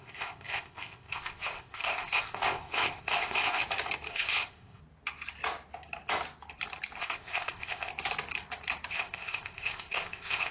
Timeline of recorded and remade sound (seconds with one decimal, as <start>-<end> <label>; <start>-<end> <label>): 0.0-3.6 remade; 3.6-4.1 recorded; 4.1-4.8 remade; 4.8-7.0 recorded; 7.0-7.9 remade; 7.9-8.9 recorded; 8.9-10.5 remade